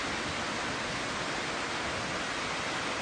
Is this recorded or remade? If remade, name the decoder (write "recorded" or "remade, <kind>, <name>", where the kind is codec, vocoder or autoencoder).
recorded